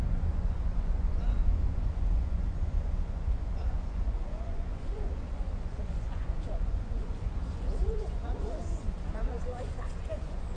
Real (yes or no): no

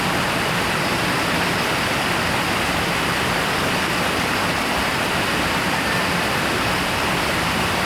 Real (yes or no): yes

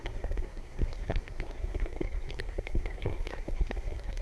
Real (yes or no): no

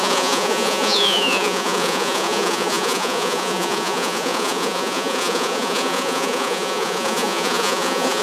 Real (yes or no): no